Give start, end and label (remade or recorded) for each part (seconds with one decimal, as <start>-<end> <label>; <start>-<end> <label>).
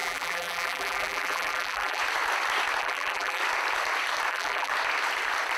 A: 0.0-2.0 remade; 2.0-2.8 recorded; 2.8-3.4 remade; 3.4-4.3 recorded; 4.3-4.7 remade; 4.7-5.6 recorded